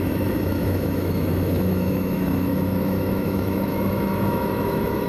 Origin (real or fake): fake